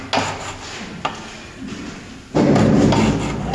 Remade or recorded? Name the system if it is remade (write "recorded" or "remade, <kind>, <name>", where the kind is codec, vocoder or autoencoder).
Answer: recorded